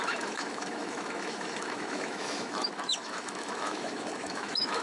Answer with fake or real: fake